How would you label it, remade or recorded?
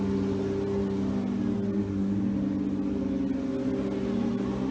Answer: recorded